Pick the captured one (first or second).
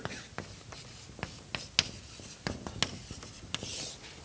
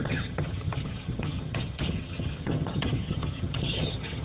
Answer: first